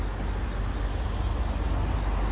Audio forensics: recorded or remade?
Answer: recorded